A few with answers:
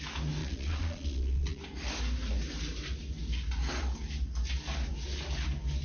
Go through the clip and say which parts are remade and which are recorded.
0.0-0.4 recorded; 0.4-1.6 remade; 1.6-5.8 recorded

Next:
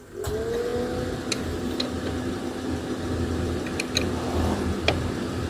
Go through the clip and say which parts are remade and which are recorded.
0.0-5.5 recorded